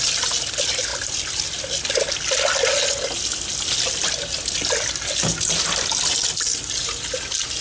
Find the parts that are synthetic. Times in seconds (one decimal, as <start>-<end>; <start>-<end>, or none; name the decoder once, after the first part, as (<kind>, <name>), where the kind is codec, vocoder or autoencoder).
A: none